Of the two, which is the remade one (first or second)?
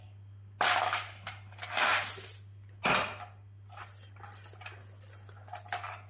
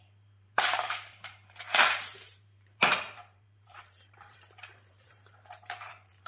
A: second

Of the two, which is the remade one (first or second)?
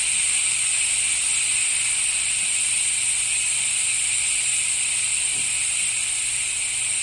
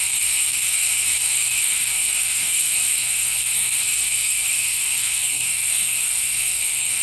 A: second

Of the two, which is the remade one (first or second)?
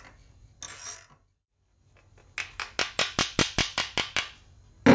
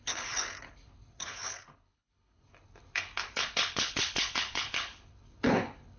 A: second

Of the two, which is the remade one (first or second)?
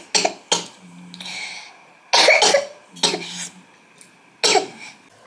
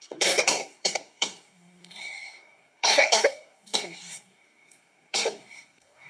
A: second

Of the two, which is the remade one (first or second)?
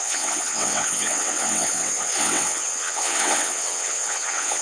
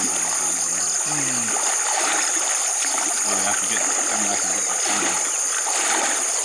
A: first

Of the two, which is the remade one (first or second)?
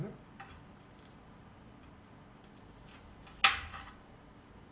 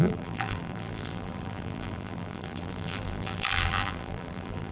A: second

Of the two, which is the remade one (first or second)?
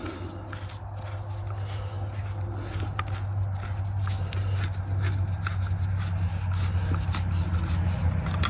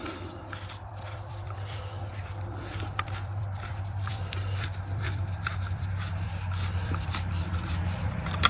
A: second